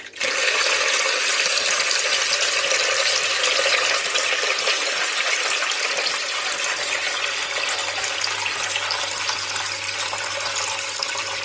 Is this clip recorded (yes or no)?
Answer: yes